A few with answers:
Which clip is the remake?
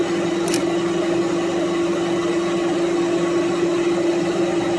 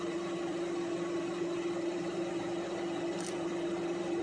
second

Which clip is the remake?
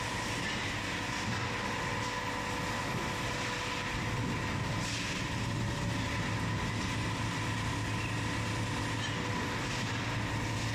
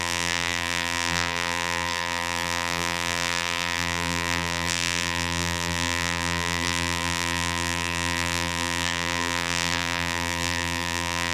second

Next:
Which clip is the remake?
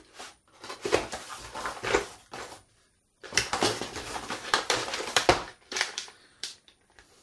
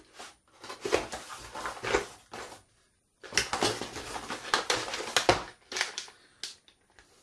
first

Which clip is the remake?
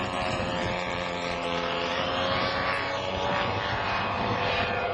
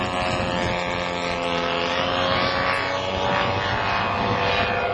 first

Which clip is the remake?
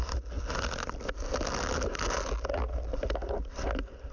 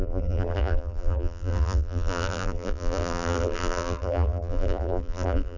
second